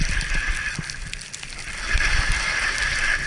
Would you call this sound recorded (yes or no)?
yes